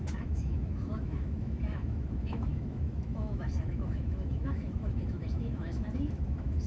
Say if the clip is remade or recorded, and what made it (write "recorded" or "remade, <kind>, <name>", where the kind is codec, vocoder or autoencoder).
remade, autoencoder, DAC-VAE